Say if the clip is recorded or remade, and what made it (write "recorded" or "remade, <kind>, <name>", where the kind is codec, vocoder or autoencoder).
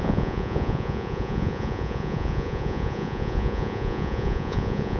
remade, vocoder, Vocos